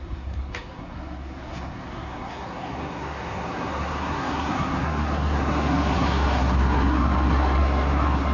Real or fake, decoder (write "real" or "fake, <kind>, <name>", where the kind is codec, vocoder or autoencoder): fake, codec, SNAC